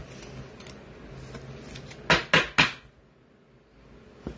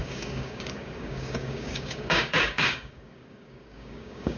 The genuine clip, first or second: first